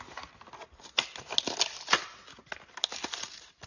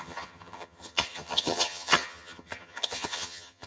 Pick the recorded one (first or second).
first